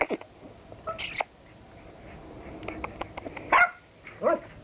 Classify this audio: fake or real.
real